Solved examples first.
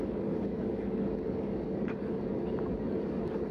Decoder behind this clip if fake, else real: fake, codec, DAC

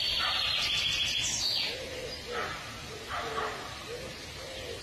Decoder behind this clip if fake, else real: real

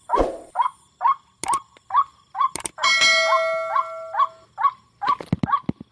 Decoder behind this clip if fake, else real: real